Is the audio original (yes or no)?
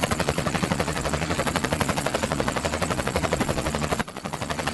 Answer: no